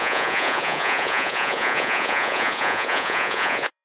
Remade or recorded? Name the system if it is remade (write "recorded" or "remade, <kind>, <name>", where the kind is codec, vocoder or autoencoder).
remade, vocoder, Vocos